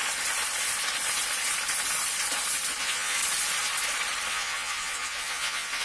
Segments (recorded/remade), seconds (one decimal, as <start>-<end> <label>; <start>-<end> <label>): 0.0-2.8 recorded; 2.8-3.2 remade; 3.2-4.3 recorded; 4.3-5.8 remade